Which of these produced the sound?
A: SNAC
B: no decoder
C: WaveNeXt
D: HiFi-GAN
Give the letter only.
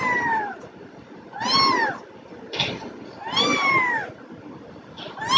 B